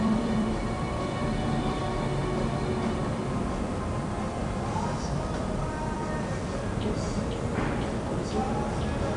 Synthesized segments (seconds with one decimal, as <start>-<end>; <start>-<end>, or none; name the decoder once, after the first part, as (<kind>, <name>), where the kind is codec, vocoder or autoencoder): 0.0-1.8 (vocoder, BigVGAN v2); 3.0-4.4; 5.0-9.2